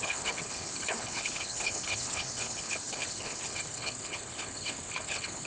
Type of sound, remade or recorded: remade